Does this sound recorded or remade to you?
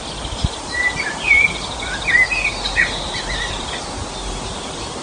recorded